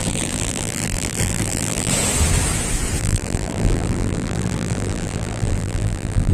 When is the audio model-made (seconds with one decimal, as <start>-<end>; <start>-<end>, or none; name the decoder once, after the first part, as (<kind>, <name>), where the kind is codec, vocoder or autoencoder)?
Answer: 0.0-1.9 (vocoder, BigVGAN v2); 3.0-6.3